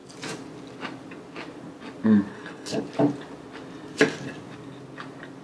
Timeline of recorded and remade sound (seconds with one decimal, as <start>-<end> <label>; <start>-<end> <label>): 0.0-2.3 recorded; 2.3-2.8 remade; 2.8-5.4 recorded